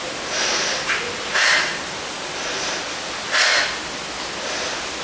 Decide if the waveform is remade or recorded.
recorded